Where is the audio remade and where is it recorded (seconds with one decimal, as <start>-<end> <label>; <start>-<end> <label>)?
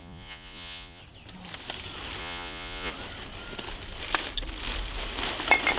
0.0-1.0 remade; 1.0-2.2 recorded; 2.2-2.9 remade; 2.9-5.8 recorded